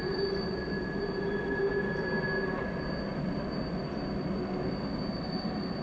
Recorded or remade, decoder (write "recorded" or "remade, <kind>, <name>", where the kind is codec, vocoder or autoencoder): recorded